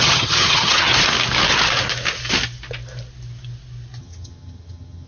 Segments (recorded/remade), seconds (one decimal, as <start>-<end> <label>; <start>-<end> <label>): 0.0-0.9 remade; 0.9-4.0 recorded; 4.0-5.1 remade